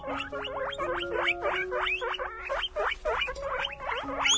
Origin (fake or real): real